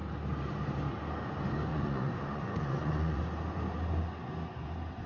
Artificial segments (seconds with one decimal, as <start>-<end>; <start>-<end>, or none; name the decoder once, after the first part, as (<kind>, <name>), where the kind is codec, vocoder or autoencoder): 1.7-3.2 (vocoder, Vocos)